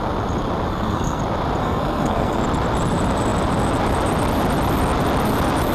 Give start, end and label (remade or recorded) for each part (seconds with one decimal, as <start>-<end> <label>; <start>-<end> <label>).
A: 0.0-0.7 recorded; 0.7-1.2 remade; 1.2-1.6 recorded; 1.6-2.4 remade; 2.4-5.7 recorded